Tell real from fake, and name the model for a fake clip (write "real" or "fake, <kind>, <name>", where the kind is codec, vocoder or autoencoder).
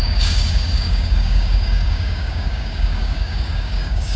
fake, codec, DAC